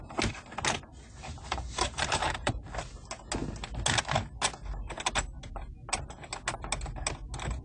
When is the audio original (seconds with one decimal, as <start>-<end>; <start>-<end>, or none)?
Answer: 0.0-0.9; 2.6-7.6